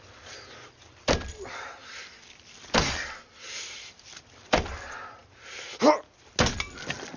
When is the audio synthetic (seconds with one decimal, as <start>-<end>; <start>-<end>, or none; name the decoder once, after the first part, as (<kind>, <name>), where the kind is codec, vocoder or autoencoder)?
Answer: none